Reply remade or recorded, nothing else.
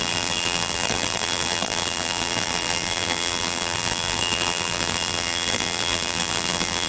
remade